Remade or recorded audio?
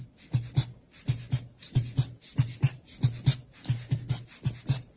recorded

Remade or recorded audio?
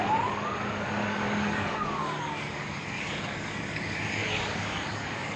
remade